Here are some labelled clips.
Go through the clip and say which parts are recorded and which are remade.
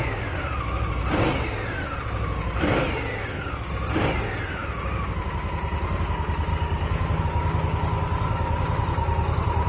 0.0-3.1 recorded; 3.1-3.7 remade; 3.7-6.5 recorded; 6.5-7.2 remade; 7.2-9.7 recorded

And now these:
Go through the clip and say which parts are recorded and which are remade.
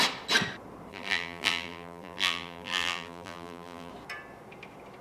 0.0-0.9 recorded; 0.9-3.9 remade; 3.9-5.0 recorded